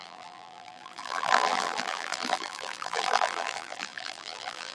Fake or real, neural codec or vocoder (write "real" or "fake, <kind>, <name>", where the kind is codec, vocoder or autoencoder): fake, vocoder, BigVGAN v2